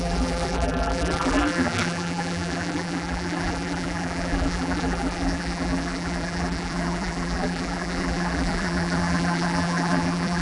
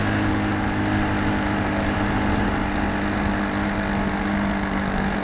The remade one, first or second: first